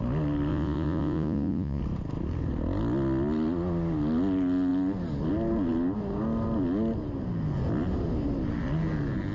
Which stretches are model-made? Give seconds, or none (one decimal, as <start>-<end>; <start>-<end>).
0.5-1.8